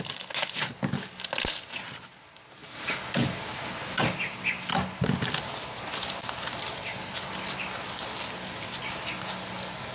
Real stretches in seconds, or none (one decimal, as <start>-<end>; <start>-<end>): 0.0-9.9